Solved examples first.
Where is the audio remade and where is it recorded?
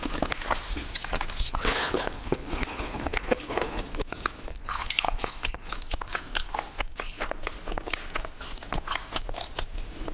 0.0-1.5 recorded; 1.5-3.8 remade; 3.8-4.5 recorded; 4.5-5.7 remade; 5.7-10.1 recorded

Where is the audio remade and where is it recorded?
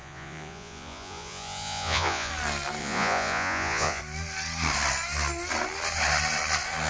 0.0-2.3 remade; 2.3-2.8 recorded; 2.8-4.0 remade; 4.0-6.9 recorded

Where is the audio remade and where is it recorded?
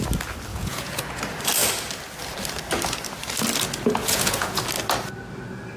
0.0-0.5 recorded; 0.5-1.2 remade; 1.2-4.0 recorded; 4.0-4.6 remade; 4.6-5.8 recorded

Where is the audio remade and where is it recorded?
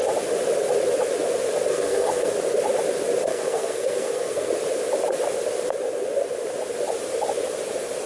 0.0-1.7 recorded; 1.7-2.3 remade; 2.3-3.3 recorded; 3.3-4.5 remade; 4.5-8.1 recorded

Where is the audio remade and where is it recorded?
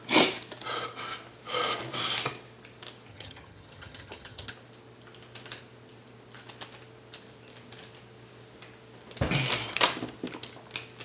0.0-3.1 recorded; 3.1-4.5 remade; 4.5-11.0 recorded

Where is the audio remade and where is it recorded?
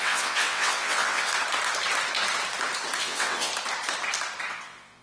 0.0-1.3 remade; 1.3-3.0 recorded; 3.0-3.5 remade; 3.5-4.5 recorded; 4.5-5.0 remade